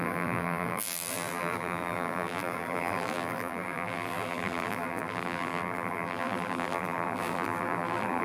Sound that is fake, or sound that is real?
fake